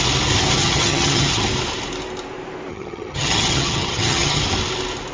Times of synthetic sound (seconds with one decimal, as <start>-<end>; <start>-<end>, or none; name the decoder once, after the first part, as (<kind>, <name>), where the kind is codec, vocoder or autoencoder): 0.6-1.4 (vocoder, HiFi-GAN); 2.7-4.4